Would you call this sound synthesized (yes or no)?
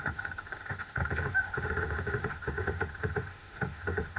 yes